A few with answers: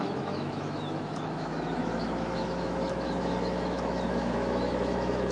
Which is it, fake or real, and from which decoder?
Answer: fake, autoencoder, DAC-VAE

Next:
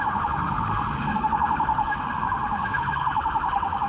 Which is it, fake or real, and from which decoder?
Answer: fake, autoencoder, DAC-VAE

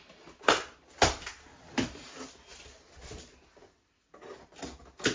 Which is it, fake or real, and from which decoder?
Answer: real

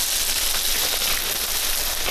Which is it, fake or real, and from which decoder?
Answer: real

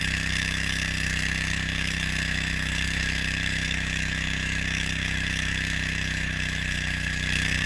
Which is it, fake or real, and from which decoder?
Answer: fake, autoencoder, DAC-VAE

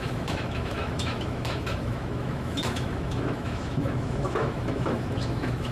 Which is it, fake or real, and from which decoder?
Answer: fake, autoencoder, DAC-VAE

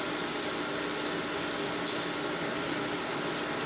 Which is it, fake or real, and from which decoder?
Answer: real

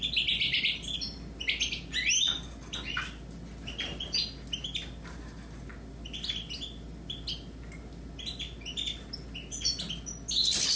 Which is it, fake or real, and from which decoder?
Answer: real